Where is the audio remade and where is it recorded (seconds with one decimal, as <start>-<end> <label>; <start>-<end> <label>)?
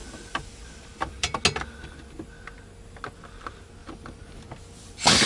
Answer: 0.0-1.4 remade; 1.4-3.8 recorded; 3.8-5.3 remade